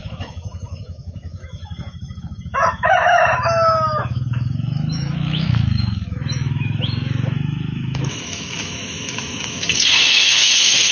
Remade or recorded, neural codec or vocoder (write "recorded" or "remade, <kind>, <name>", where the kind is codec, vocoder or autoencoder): remade, autoencoder, DAC-VAE